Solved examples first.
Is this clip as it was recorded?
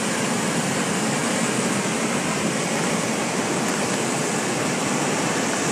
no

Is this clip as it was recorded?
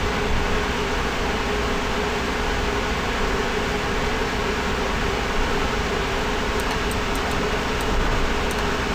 yes